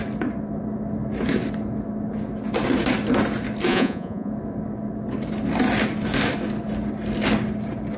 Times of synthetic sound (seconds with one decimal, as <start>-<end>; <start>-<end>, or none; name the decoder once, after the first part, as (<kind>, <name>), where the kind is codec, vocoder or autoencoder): 3.7-4.3 (vocoder, Vocos)